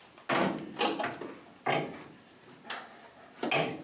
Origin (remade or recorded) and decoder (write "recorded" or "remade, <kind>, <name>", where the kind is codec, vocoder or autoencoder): recorded